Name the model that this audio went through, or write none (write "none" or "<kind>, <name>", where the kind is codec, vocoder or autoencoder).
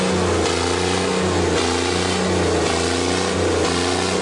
none